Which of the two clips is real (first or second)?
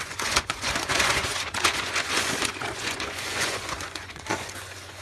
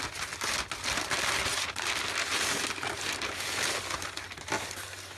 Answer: second